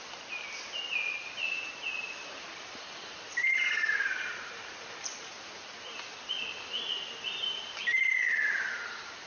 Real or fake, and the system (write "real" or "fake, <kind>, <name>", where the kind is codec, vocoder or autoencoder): real